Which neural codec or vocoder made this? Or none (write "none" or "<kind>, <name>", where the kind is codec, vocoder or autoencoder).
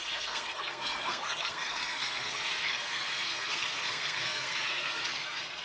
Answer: codec, SNAC